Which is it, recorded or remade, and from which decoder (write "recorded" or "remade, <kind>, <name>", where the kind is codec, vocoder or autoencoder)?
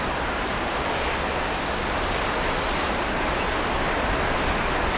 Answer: recorded